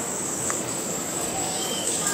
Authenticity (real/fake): fake